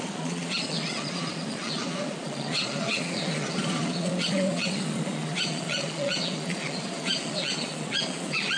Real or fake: fake